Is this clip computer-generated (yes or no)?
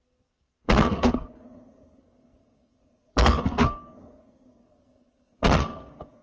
yes